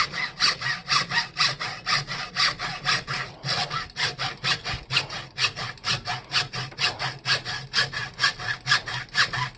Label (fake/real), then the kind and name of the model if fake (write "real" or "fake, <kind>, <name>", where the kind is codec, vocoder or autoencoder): real